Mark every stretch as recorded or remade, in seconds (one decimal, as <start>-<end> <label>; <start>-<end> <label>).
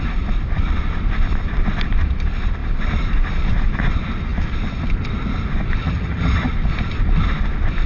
0.0-5.8 recorded; 5.8-6.5 remade; 6.5-7.9 recorded